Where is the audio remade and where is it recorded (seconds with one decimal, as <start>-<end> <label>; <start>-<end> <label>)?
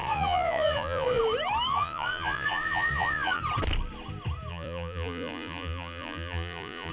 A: 0.0-1.2 remade; 1.2-1.7 recorded; 1.7-3.4 remade; 3.4-4.5 recorded; 4.5-6.9 remade